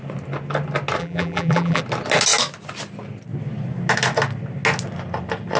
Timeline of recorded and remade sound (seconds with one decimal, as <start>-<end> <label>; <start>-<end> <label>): 0.0-1.0 recorded; 1.0-1.8 remade; 1.8-5.6 recorded